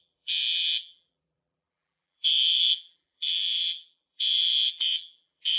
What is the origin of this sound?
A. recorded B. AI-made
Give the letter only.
B